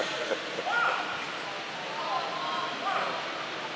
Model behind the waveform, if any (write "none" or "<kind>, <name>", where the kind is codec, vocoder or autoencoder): none